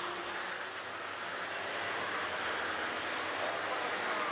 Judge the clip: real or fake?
real